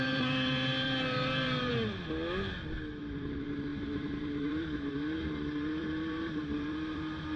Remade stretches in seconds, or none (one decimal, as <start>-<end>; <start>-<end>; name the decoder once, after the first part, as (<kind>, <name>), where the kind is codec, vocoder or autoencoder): 0.0-1.7 (vocoder, BigVGAN v2); 3.0-7.4